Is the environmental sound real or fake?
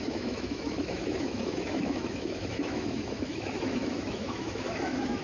fake